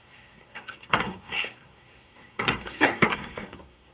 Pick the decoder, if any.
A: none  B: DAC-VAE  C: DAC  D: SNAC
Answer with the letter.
D